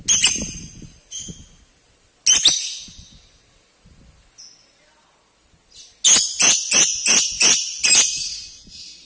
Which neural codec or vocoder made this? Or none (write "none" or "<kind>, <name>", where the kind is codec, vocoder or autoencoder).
none